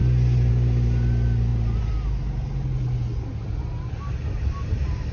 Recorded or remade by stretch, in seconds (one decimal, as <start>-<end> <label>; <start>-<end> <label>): 0.0-5.1 recorded